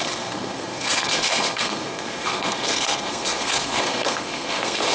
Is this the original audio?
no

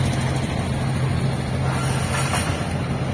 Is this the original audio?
yes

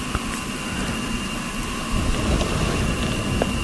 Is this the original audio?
yes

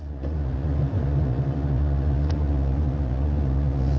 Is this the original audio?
no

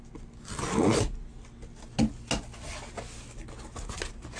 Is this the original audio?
yes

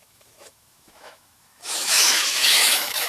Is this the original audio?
no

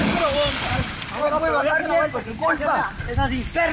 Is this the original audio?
yes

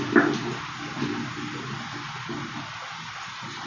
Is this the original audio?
yes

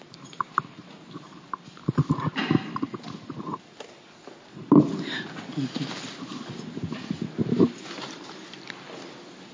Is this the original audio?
yes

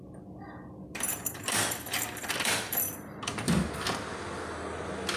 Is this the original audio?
no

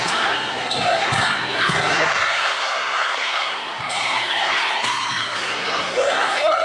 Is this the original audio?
no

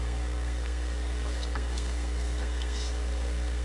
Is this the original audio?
no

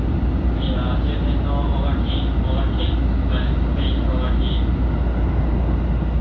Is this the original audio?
yes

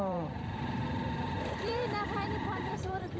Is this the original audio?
no